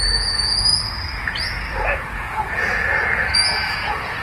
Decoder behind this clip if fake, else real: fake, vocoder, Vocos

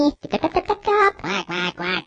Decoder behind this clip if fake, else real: fake, vocoder, BigVGAN v2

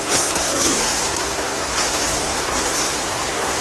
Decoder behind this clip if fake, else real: fake, codec, SNAC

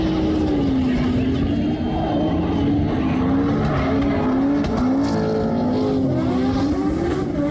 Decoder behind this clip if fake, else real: real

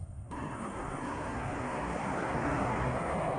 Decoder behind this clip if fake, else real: fake, codec, SNAC